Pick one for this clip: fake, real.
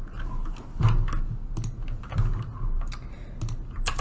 real